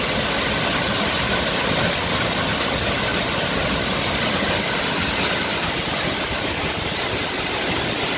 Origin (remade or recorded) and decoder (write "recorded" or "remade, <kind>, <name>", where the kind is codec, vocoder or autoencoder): recorded